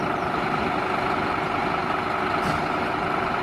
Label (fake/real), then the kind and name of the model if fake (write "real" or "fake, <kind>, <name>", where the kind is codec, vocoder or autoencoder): real